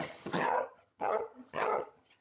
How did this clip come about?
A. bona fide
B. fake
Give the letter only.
B